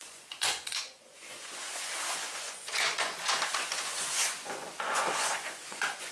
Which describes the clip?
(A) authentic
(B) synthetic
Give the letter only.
B